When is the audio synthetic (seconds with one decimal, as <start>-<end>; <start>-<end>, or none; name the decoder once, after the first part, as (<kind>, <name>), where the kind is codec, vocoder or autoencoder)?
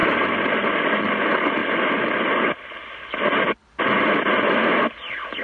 none